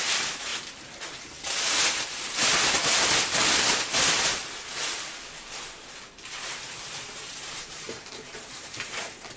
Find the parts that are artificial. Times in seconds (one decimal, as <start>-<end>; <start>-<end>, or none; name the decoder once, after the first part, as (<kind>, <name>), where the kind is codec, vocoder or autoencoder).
0.0-0.5 (vocoder, BigVGAN v2); 1.8-2.4; 6.5-9.4